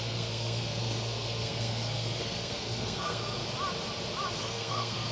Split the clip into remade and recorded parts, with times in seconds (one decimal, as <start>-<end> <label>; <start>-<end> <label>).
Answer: 0.0-3.4 remade; 3.4-4.4 recorded; 4.4-5.1 remade